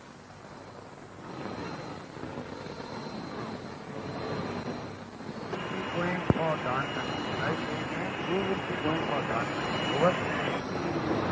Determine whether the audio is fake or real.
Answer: real